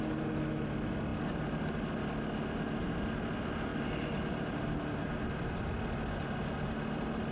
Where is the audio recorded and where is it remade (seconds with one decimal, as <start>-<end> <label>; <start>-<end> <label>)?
0.0-7.3 recorded